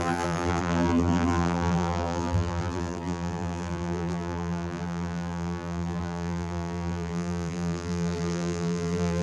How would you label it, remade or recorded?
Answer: remade